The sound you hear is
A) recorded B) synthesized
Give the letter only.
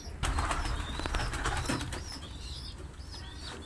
A